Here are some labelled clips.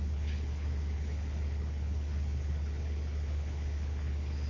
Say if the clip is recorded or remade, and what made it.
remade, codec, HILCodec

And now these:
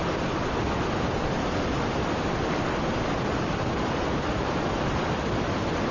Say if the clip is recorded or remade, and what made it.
recorded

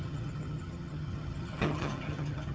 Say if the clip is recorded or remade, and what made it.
remade, vocoder, HiFi-GAN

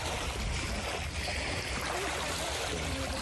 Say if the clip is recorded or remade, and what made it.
recorded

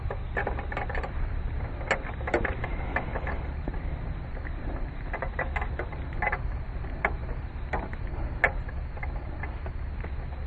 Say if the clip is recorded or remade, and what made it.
recorded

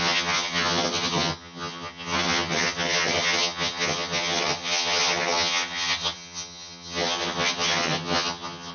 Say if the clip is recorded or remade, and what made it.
remade, vocoder, HiFi-GAN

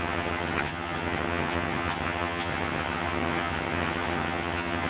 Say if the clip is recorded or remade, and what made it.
remade, vocoder, HiFi-GAN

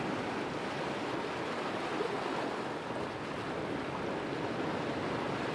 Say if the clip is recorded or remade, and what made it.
recorded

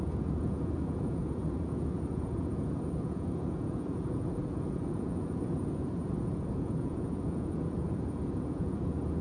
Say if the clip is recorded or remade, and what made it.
remade, vocoder, Vocos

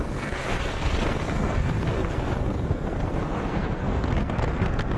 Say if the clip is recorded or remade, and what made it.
remade, codec, SNAC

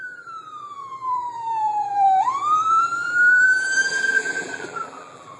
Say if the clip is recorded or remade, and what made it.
remade, vocoder, BigVGAN v2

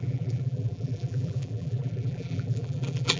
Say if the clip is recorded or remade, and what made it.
remade, vocoder, BigVGAN v2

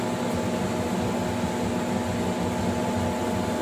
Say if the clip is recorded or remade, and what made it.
recorded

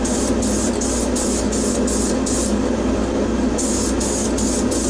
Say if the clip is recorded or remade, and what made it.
recorded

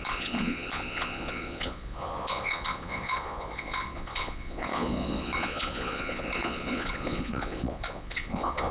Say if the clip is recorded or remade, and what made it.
remade, vocoder, Vocos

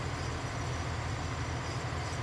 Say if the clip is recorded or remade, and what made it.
recorded